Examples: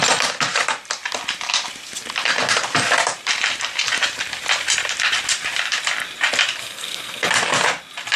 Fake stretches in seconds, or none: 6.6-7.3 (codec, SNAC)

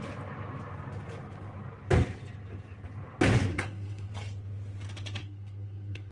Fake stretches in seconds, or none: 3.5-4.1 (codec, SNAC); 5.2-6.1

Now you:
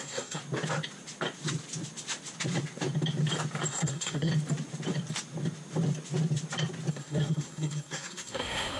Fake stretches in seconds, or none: 0.0-0.4 (codec, SNAC); 3.7-4.3; 6.9-8.8

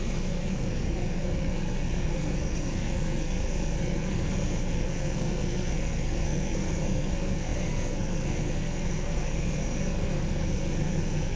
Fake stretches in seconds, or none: 0.0-11.4 (codec, SNAC)

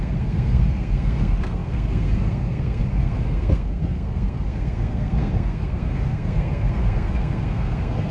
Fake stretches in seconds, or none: 0.0-8.1 (codec, SNAC)

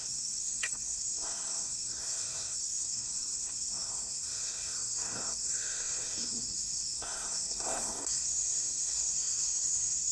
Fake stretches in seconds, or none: 0.0-10.1 (codec, SNAC)